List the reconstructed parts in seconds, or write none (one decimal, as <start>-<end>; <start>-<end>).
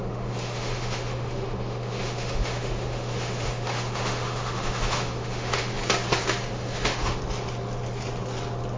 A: 0.0-5.8; 6.5-7.2